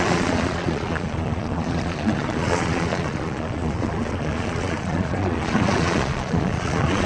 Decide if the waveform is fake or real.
fake